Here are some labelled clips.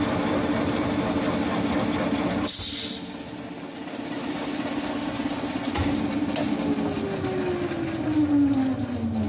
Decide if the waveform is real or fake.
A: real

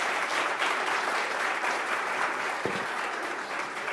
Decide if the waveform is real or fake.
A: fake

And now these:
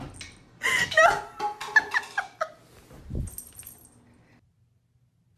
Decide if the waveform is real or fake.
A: real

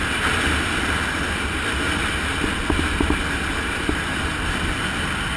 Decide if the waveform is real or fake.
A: real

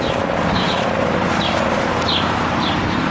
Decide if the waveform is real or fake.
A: fake